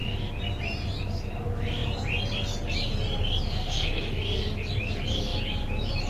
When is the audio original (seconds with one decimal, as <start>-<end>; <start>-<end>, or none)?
0.0-3.6; 4.2-6.1